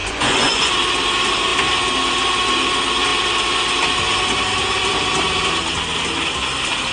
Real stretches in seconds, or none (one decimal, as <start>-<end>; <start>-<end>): 0.7-6.9